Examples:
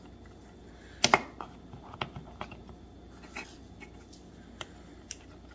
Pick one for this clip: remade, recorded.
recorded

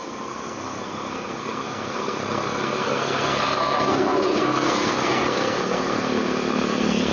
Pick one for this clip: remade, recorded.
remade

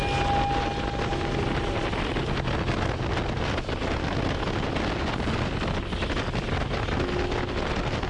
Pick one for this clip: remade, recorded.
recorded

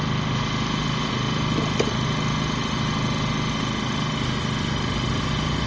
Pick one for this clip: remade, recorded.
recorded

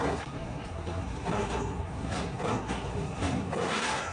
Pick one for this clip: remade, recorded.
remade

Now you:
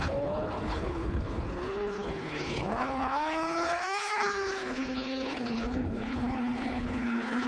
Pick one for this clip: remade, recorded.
remade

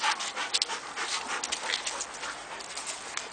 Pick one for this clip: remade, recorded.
recorded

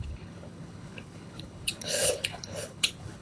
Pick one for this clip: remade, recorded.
remade